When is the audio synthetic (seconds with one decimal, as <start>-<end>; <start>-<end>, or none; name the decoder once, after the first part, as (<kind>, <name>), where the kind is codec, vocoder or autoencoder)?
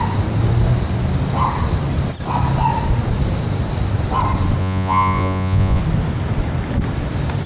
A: 4.6-5.8 (vocoder, Vocos)